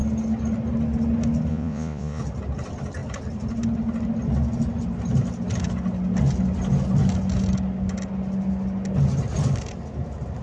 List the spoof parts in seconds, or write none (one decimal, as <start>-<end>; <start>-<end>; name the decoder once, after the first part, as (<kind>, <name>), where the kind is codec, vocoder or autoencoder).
1.5-2.2 (vocoder, Vocos)